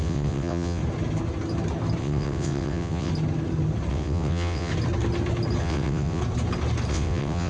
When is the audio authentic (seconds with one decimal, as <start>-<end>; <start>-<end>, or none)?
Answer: 0.8-2.0; 3.1-3.9; 4.7-5.6; 6.2-6.9